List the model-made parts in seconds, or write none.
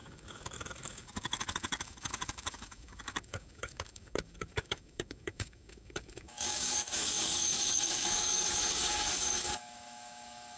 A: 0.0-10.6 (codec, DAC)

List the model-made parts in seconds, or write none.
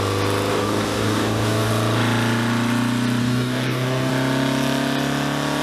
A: 0.5-1.7 (codec, DAC); 3.2-4.1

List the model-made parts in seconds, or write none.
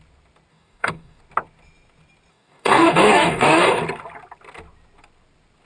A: 0.5-1.2 (codec, DAC); 2.3-3.8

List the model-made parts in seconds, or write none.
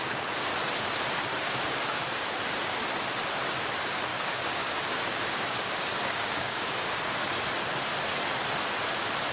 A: 1.3-2.0 (codec, DAC); 4.1-7.5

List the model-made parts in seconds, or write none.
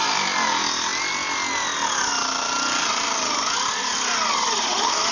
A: none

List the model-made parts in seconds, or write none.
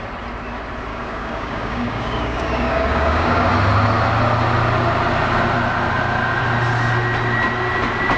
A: 0.9-3.5 (codec, DAC)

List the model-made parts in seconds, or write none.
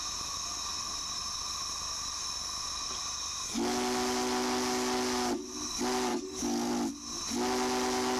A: 6.1-6.7 (codec, DAC)